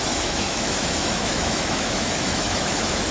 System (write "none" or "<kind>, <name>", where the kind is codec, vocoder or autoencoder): autoencoder, DAC-VAE